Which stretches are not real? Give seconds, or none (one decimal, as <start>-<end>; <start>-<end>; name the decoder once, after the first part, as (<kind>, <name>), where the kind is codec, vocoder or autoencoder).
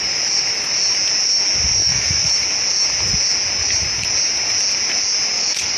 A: 1.8-2.3 (autoencoder, DAC-VAE)